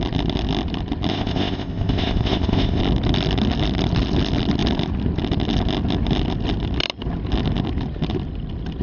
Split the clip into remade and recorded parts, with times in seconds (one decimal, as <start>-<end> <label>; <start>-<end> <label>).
0.0-1.1 recorded; 1.1-2.8 remade; 2.8-8.8 recorded